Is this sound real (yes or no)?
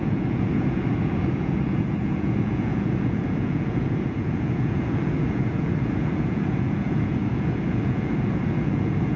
no